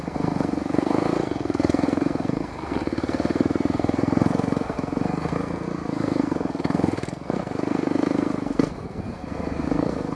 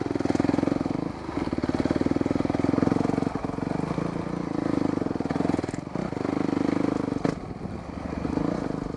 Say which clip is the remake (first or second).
first